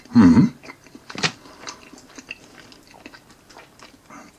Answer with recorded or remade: recorded